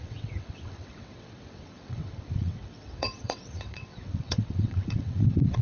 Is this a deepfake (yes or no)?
yes